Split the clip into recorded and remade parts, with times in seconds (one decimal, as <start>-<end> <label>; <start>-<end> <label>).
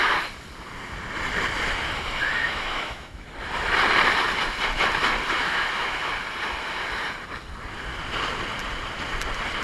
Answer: 0.0-2.4 recorded; 2.4-3.3 remade; 3.3-5.4 recorded; 5.4-6.1 remade; 6.1-9.6 recorded